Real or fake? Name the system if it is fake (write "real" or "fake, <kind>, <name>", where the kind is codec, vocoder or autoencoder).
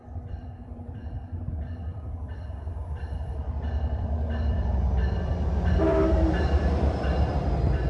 fake, vocoder, BigVGAN v2